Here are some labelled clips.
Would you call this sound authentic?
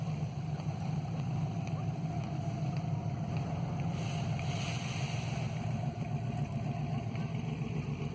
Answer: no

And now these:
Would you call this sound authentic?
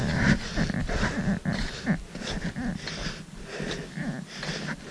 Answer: yes